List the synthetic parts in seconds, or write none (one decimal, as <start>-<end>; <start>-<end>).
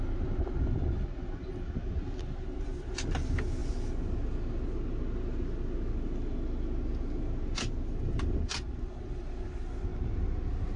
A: none